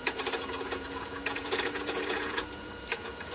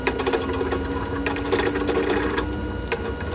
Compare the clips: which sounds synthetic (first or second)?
first